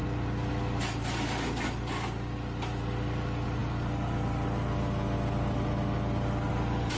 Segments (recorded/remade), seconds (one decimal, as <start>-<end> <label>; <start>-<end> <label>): 0.0-7.0 recorded